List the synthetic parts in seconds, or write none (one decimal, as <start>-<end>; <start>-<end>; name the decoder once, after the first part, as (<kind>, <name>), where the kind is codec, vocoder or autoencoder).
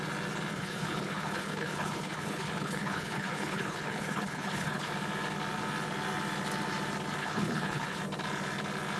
0.5-4.9 (codec, HILCodec); 7.2-8.0